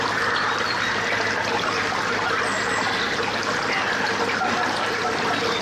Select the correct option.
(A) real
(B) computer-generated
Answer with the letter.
A